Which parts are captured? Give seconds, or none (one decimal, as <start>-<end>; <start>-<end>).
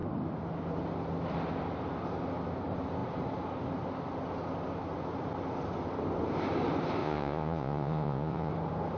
0.0-7.0; 8.5-9.0